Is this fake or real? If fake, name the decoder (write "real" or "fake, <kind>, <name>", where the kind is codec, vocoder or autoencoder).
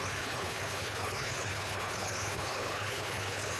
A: fake, codec, HILCodec